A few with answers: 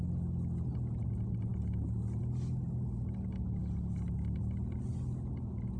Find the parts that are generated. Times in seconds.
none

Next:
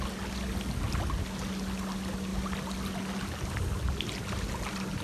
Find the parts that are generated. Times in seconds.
none

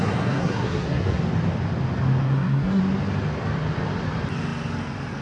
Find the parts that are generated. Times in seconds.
0.0-1.2; 2.2-2.8

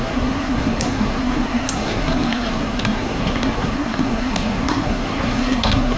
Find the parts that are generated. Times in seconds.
0.0-6.0